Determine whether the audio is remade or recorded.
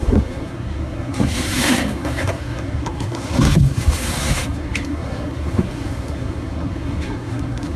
remade